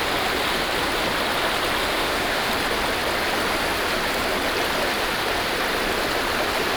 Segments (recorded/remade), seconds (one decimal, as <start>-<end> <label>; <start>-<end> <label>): 0.0-1.9 recorded; 1.9-2.5 remade; 2.5-6.8 recorded